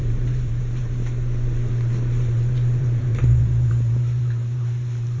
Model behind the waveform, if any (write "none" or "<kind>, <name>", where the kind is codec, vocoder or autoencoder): vocoder, BigVGAN v2